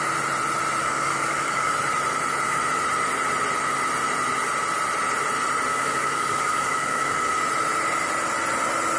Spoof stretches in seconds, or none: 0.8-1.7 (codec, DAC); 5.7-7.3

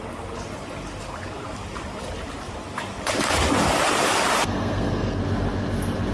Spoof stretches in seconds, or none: 4.4-5.2 (codec, SNAC)

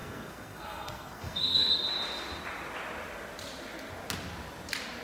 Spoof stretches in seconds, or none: 0.0-1.7 (codec, SNAC)